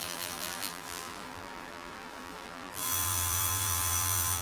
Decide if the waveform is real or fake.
fake